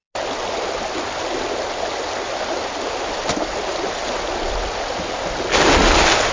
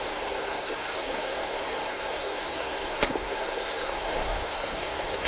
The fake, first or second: second